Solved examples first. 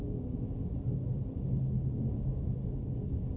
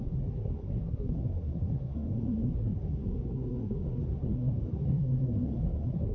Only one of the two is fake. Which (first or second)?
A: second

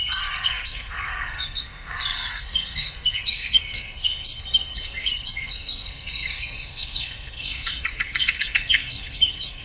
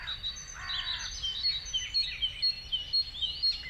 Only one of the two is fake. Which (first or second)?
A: first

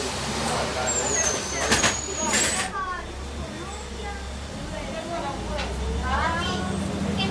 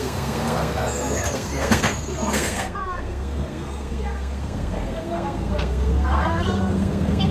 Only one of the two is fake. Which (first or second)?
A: second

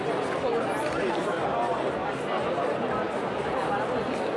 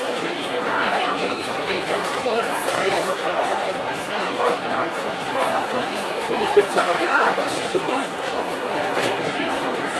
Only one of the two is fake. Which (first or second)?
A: second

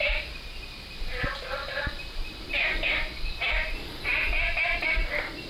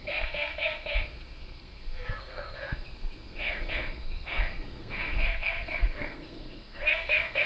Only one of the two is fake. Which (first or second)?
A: second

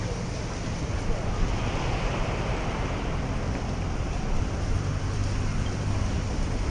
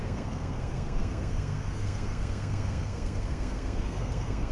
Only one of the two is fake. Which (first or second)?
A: second